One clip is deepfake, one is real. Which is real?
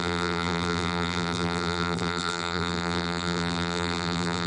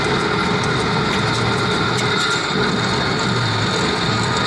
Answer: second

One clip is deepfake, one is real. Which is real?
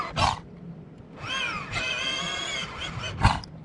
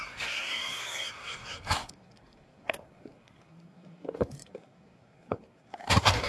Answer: first